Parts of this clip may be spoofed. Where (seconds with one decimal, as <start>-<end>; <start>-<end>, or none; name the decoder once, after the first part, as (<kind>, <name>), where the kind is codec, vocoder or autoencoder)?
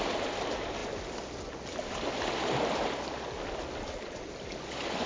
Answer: none